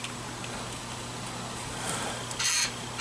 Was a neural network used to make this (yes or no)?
no